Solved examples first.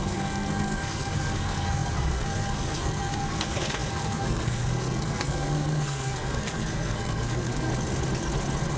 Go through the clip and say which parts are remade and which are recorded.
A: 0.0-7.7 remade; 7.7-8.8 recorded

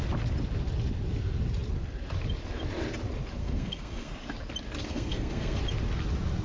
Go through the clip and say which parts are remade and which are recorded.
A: 0.0-3.4 recorded; 3.4-4.3 remade; 4.3-4.8 recorded; 4.8-5.6 remade; 5.6-6.4 recorded

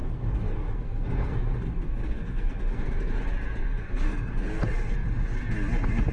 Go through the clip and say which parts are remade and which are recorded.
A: 0.0-3.1 remade; 3.1-3.6 recorded; 3.6-4.5 remade; 4.5-6.1 recorded

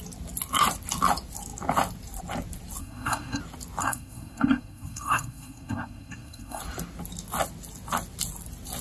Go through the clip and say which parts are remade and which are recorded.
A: 0.0-2.8 recorded; 2.8-3.4 remade; 3.4-3.8 recorded; 3.8-6.6 remade; 6.6-8.8 recorded

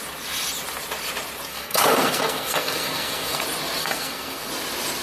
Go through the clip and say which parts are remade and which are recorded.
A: 0.0-1.5 recorded; 1.5-3.4 remade; 3.4-3.8 recorded; 3.8-4.5 remade; 4.5-5.0 recorded

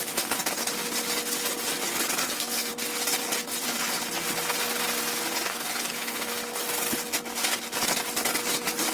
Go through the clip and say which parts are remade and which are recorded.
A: 0.0-2.2 recorded; 2.2-2.7 remade; 2.7-5.5 recorded; 5.5-6.3 remade; 6.3-8.9 recorded

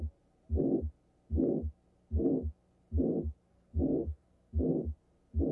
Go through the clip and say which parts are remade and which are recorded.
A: 0.0-3.5 recorded; 3.5-4.5 remade; 4.5-5.5 recorded

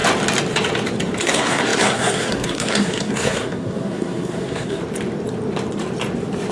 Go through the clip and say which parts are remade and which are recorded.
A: 0.0-1.2 recorded; 1.2-4.8 remade; 4.8-6.5 recorded